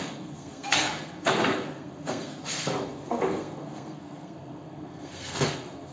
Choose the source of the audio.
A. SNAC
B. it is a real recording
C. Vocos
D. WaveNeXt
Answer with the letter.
A